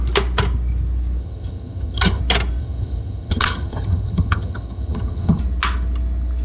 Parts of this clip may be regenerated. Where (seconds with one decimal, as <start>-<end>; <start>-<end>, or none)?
1.2-2.2; 2.6-5.4